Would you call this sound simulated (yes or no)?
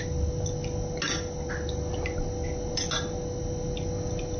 no